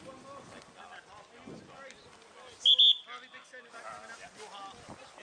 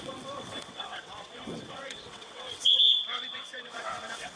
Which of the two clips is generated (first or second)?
second